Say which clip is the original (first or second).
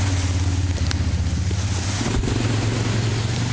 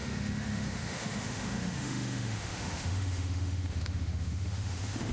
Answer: first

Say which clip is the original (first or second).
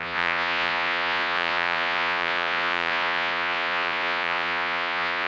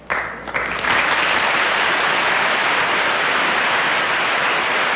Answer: second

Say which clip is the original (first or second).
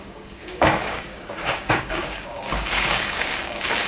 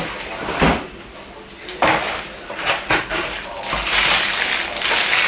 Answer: second